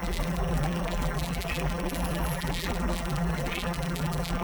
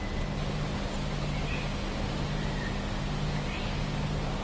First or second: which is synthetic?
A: first